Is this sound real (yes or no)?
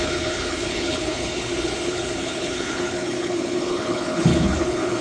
no